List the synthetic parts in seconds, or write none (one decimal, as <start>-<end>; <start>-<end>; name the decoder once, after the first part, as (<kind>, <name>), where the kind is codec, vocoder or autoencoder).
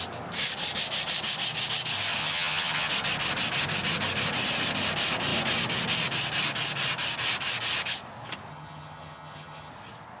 2.2-2.9 (vocoder, HiFi-GAN); 8.5-9.7